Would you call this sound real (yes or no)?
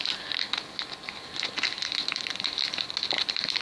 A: yes